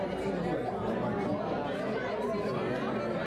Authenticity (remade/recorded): recorded